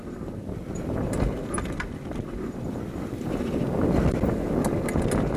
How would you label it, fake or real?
real